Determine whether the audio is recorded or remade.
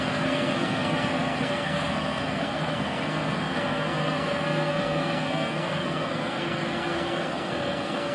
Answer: remade